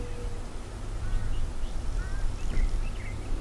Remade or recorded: recorded